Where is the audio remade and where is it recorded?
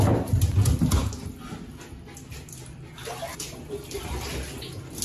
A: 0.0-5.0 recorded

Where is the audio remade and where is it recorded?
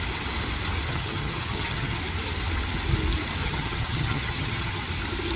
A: 0.0-0.9 recorded; 0.9-2.0 remade; 2.0-3.4 recorded; 3.4-4.8 remade; 4.8-5.4 recorded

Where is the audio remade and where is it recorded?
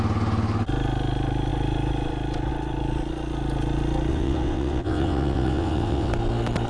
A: 0.0-4.1 recorded; 4.1-6.1 remade; 6.1-6.7 recorded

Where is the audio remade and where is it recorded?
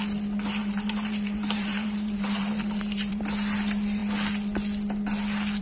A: 0.0-0.6 recorded; 0.6-3.2 remade; 3.2-5.6 recorded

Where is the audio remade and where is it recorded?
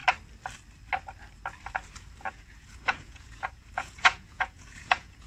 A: 0.0-2.3 recorded; 2.3-5.3 remade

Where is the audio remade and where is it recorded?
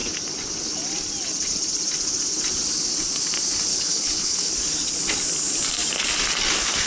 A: 0.0-3.7 recorded; 3.7-4.5 remade; 4.5-6.9 recorded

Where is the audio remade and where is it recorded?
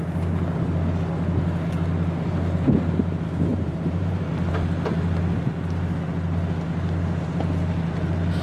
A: 0.0-3.5 recorded; 3.5-4.5 remade; 4.5-8.4 recorded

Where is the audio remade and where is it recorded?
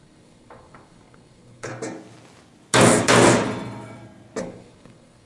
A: 0.0-1.7 remade; 1.7-4.4 recorded; 4.4-5.3 remade